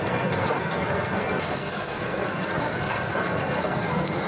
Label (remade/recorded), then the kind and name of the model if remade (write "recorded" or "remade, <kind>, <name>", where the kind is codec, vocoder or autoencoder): remade, codec, SNAC